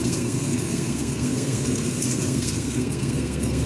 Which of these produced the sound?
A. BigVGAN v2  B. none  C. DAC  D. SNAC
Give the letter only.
D